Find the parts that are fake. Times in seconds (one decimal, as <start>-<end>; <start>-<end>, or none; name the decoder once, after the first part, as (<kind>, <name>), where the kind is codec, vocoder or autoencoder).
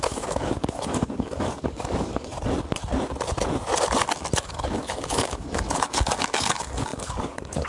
0.0-2.3 (codec, DAC); 4.3-7.7